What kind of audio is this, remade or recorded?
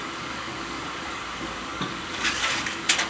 remade